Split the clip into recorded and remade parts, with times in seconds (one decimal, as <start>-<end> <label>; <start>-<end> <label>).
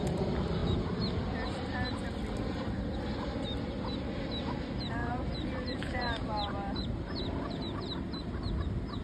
0.0-5.0 recorded; 5.0-8.4 remade; 8.4-9.0 recorded